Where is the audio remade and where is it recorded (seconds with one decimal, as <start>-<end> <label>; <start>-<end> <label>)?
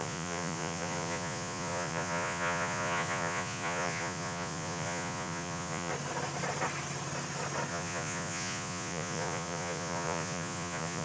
0.0-5.9 remade; 5.9-7.7 recorded; 7.7-11.0 remade